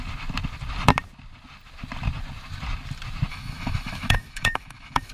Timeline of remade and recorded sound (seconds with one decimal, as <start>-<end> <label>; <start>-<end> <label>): 0.0-3.3 recorded; 3.3-5.1 remade